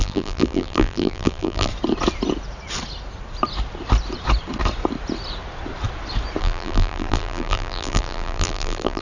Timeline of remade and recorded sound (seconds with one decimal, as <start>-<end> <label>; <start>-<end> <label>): 0.0-1.7 remade; 1.7-6.4 recorded; 6.4-9.0 remade